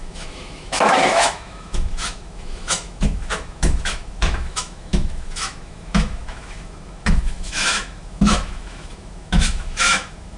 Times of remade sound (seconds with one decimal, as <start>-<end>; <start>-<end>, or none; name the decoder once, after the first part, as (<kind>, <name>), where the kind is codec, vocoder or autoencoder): 0.0-10.4 (autoencoder, DAC-VAE)